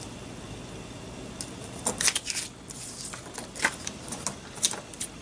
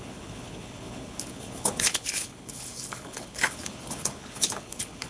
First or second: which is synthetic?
second